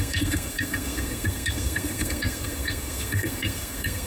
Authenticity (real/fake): fake